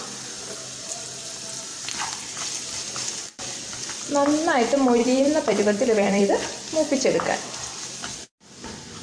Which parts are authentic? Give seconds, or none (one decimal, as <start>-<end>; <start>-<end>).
0.0-1.7; 3.9-5.0; 6.3-8.0